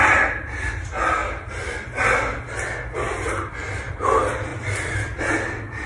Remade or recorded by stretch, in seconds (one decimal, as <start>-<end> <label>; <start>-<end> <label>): 0.0-4.5 recorded; 4.5-5.2 remade; 5.2-5.9 recorded